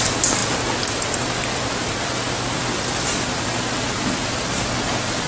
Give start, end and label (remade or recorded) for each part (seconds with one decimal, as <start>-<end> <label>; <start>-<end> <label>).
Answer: 0.0-5.3 recorded